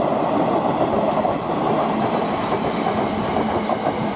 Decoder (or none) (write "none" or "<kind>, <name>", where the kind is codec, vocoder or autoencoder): none